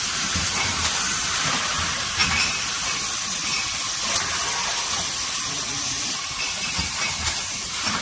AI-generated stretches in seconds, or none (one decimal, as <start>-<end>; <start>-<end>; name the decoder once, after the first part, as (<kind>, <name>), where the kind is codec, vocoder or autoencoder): 0.0-2.2 (vocoder, BigVGAN v2); 6.8-8.0